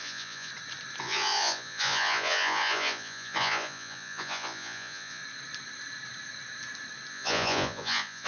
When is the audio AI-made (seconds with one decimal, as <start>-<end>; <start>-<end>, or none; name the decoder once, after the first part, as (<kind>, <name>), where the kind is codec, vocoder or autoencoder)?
0.0-0.5 (vocoder, Vocos); 1.0-5.2; 7.1-8.3